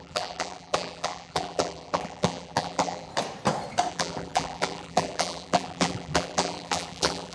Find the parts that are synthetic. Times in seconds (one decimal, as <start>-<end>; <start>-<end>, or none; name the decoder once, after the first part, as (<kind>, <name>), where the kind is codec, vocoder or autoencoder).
0.0-3.1 (vocoder, BigVGAN v2); 3.9-7.3